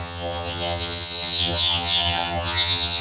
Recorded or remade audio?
remade